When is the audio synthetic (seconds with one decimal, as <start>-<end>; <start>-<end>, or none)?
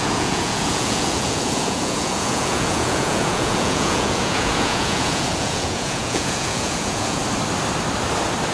0.0-7.2